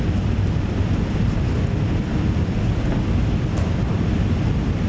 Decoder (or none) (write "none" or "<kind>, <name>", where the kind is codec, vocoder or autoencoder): none